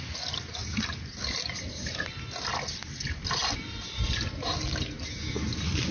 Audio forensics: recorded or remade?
recorded